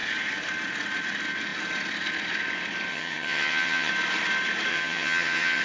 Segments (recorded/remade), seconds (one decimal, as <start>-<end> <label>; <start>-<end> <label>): 0.0-2.9 recorded; 2.9-3.9 remade; 3.9-4.7 recorded; 4.7-5.6 remade